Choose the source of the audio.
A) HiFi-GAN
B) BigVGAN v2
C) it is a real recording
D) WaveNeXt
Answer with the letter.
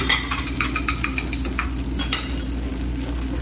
C